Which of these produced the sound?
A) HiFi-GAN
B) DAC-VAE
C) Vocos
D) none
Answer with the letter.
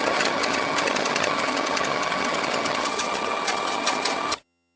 A